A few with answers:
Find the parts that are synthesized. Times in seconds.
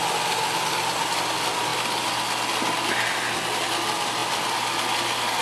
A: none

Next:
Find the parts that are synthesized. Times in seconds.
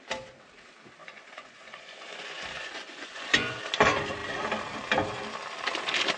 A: 1.0-3.6 (vocoder, Vocos)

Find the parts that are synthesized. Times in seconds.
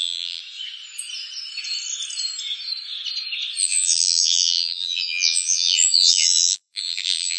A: 0.0-0.4 (vocoder, BigVGAN v2); 3.6-7.4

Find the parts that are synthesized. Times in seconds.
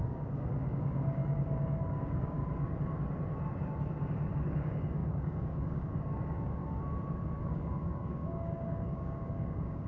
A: 0.0-2.4 (codec, DAC); 4.3-6.6; 7.4-9.9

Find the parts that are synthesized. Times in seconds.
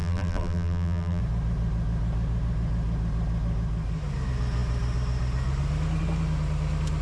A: 0.0-1.2 (vocoder, BigVGAN v2)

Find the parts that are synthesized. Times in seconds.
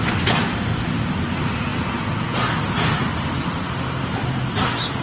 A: none